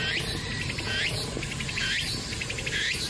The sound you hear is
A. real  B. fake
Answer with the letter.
A